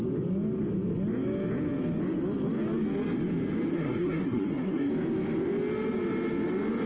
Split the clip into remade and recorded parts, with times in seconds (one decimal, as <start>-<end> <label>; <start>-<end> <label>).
0.0-3.7 recorded; 3.7-4.9 remade; 4.9-6.9 recorded